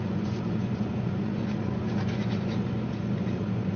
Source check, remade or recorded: remade